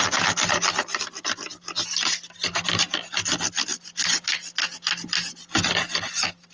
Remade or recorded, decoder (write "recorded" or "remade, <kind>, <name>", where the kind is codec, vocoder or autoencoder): recorded